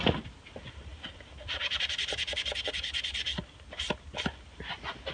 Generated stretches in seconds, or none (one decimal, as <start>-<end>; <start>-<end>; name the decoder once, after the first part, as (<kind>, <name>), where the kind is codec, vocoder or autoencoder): 0.9-4.0 (vocoder, BigVGAN v2)